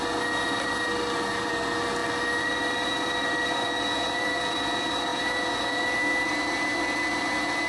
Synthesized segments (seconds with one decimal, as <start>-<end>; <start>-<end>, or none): none